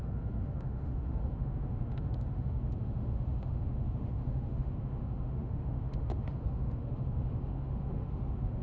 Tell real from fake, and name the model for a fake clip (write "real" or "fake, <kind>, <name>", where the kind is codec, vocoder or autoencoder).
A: fake, autoencoder, DAC-VAE